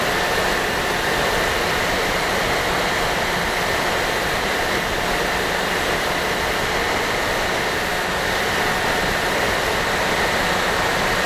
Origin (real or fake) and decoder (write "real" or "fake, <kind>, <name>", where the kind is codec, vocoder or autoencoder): fake, vocoder, BigVGAN v2